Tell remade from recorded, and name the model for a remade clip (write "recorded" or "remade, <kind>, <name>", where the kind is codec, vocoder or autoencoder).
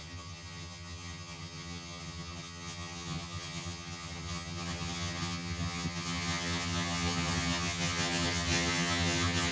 remade, vocoder, HiFi-GAN